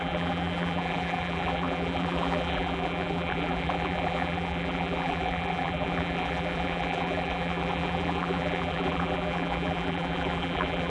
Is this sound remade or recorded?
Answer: remade